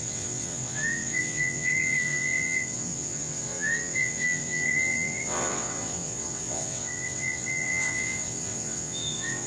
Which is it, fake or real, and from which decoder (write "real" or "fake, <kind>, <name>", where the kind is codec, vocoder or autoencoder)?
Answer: fake, vocoder, WaveNeXt